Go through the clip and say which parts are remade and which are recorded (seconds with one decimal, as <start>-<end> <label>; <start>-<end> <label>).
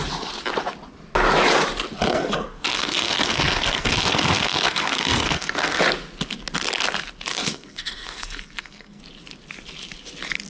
0.0-2.1 recorded; 2.1-5.8 remade; 5.8-7.3 recorded; 7.3-9.0 remade; 9.0-10.5 recorded